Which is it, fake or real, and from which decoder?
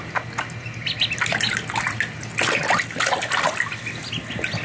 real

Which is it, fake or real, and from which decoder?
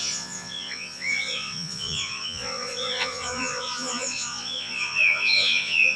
fake, vocoder, Vocos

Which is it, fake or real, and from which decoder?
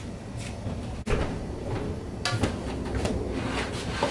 real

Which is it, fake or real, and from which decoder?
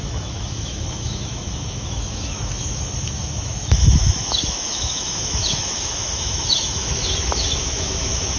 fake, autoencoder, DAC-VAE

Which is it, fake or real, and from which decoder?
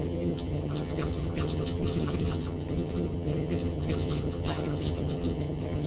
fake, vocoder, HiFi-GAN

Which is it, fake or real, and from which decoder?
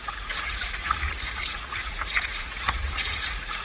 fake, vocoder, Vocos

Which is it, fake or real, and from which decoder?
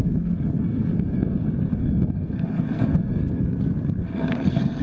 fake, codec, SNAC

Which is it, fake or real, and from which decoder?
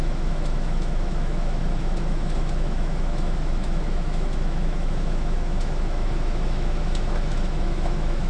fake, autoencoder, DAC-VAE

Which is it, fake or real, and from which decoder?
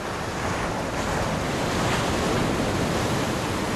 real